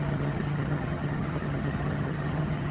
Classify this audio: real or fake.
fake